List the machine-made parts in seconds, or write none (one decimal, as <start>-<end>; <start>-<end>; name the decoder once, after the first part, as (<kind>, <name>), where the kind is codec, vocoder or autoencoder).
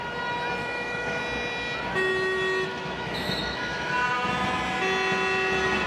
0.6-1.2 (autoencoder, DAC-VAE); 2.7-3.9